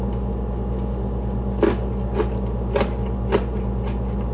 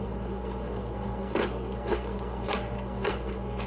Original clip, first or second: first